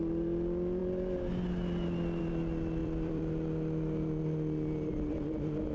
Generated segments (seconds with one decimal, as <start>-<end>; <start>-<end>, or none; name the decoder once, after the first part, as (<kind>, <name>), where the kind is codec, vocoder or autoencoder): 2.8-3.3 (vocoder, BigVGAN v2)

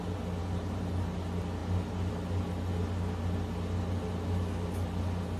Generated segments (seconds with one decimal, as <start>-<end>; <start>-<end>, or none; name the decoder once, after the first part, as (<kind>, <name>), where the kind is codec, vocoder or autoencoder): 0.4-1.2 (vocoder, BigVGAN v2)

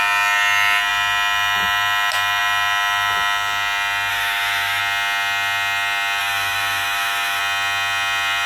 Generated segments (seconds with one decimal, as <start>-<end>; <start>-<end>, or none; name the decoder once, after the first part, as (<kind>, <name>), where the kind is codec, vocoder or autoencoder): 4.1-4.8 (autoencoder, DAC-VAE); 6.2-7.4

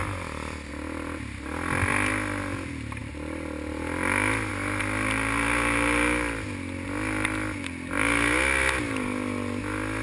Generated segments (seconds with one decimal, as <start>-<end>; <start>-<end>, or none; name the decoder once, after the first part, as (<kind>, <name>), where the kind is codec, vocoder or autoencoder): none

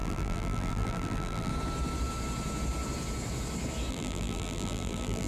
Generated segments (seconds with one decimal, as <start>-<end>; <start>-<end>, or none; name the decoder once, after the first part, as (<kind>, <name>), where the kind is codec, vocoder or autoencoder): 0.0-1.5 (vocoder, BigVGAN v2); 3.9-5.3